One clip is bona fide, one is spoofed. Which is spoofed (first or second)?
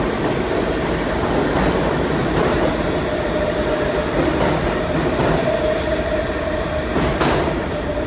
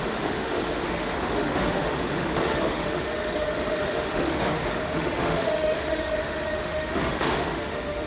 second